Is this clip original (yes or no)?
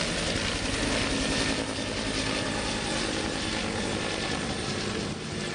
yes